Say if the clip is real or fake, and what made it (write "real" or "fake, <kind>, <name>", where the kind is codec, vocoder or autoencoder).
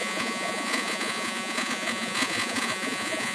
fake, vocoder, Vocos